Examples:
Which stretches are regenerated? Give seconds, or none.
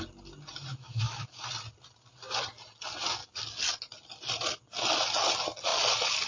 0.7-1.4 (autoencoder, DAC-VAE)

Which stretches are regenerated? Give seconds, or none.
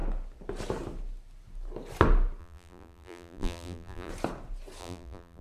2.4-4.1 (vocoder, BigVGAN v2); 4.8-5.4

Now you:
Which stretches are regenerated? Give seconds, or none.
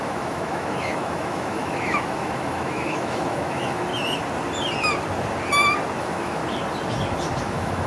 0.0-3.9 (autoencoder, DAC-VAE); 6.0-6.4; 7.4-7.9